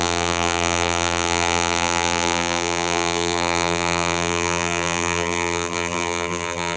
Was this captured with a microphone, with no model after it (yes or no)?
no